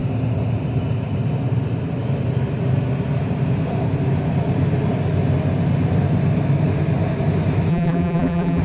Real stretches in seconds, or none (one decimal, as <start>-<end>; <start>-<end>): 0.0-7.7